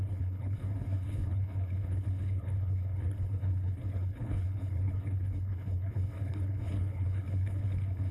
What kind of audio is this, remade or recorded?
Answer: remade